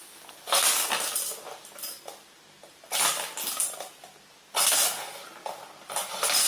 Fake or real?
real